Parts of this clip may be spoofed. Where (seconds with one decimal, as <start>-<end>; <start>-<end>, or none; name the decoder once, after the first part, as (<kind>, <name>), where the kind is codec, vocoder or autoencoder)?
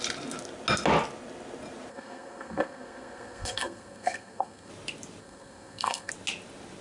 1.9-4.7 (codec, SNAC); 5.2-6.1